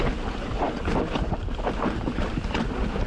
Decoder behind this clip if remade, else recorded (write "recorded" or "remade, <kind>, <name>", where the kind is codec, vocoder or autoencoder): remade, vocoder, BigVGAN v2